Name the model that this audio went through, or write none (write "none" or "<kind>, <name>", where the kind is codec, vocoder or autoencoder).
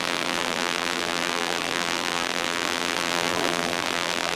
vocoder, BigVGAN v2